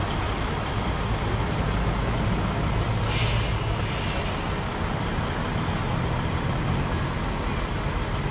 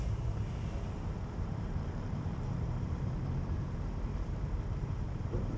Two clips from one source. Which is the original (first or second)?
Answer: first